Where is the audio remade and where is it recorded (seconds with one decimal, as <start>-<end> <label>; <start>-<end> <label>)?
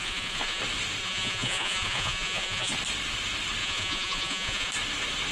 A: 0.0-0.6 remade; 0.6-1.0 recorded; 1.0-2.7 remade; 2.7-3.6 recorded; 3.6-4.7 remade; 4.7-5.3 recorded